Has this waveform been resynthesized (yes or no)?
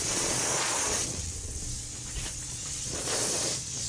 yes